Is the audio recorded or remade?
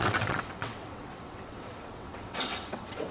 remade